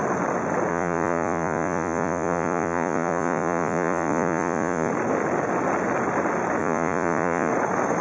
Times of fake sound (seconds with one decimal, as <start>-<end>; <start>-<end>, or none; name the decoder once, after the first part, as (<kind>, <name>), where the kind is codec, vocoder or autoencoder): 0.7-4.9 (vocoder, Vocos); 6.6-7.5